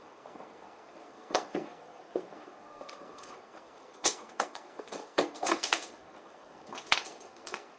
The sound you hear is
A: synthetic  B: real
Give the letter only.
A